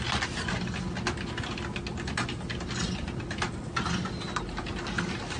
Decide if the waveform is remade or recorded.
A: recorded